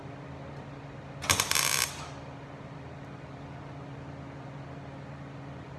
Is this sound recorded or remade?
recorded